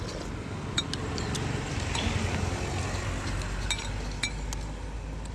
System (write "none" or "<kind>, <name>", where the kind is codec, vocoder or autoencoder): none